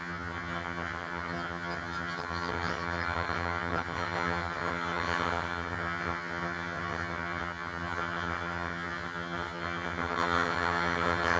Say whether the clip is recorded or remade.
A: remade